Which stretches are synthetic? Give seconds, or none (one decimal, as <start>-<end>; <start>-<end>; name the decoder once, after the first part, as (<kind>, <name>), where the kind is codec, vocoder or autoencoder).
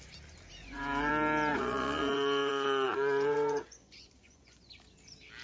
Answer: 0.6-1.1 (vocoder, Vocos); 1.5-4.7